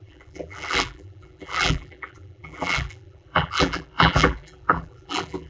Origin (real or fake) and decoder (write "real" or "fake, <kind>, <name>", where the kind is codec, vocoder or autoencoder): fake, vocoder, BigVGAN v2